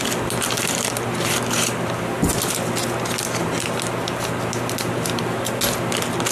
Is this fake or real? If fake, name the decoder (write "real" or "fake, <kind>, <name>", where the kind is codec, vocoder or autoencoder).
real